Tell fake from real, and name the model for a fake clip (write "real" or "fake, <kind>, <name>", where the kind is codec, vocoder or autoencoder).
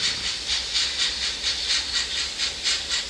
real